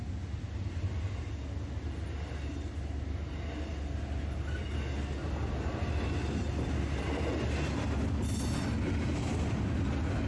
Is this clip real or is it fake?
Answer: real